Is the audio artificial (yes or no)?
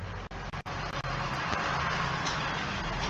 no